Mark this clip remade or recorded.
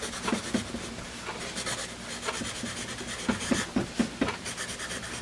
recorded